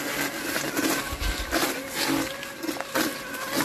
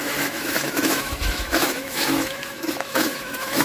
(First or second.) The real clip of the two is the first